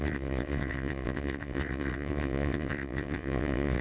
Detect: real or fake fake